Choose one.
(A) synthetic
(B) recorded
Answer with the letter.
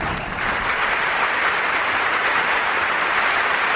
A